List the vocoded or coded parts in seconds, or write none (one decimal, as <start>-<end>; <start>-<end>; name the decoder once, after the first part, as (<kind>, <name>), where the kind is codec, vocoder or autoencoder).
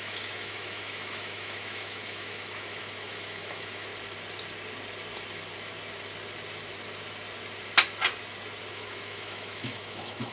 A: 0.0-3.9 (autoencoder, DAC-VAE); 8.7-10.3